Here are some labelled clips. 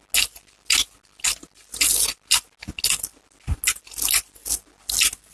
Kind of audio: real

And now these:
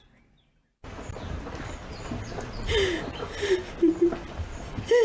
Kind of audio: real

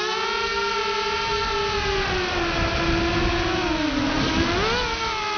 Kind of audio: real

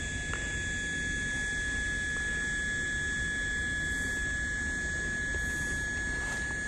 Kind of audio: real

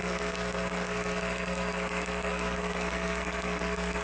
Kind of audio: fake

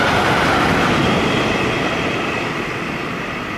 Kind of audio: real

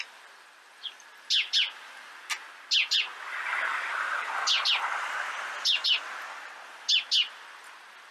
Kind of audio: real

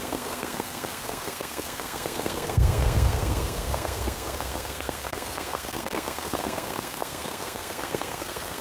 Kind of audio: fake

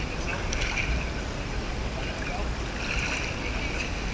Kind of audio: real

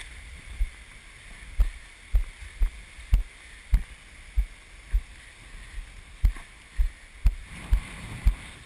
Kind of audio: real